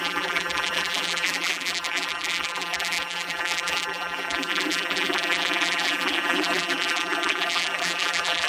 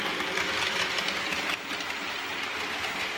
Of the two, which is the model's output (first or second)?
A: first